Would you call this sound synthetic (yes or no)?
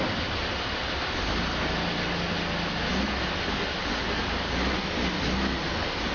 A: no